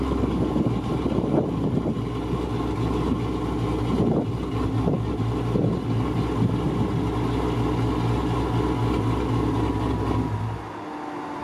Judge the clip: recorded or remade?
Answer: recorded